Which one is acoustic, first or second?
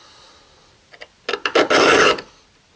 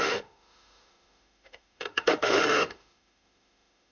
first